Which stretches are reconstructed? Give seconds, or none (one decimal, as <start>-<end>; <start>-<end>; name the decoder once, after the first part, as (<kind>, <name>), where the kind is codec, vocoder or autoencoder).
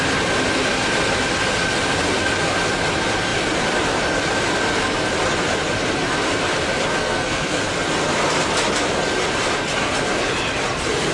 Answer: 7.0-7.6 (codec, SNAC)